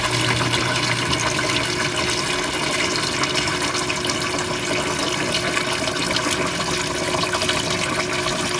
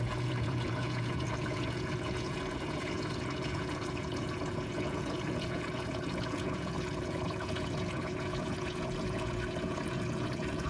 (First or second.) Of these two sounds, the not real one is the second